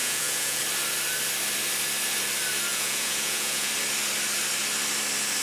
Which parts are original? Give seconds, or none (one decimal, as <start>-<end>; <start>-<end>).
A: 0.6-2.7; 3.7-5.4